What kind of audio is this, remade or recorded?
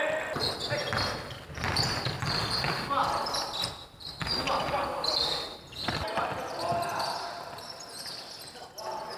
recorded